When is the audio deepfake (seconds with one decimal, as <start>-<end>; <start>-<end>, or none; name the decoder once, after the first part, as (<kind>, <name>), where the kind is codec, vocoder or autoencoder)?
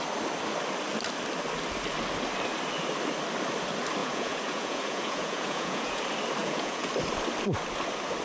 4.0-6.0 (vocoder, Vocos); 6.4-6.9